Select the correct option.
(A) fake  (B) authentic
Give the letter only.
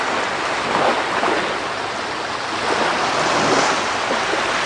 B